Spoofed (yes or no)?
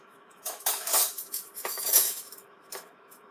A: yes